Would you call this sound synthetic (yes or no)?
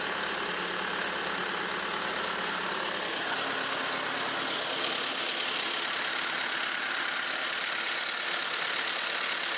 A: no